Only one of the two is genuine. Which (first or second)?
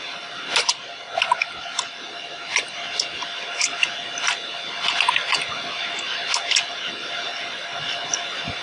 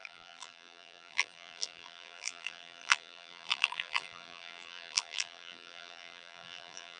first